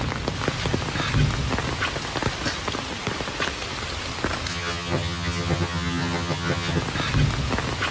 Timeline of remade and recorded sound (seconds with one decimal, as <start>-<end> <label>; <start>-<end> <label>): 0.0-4.5 recorded; 4.5-6.8 remade; 6.8-7.9 recorded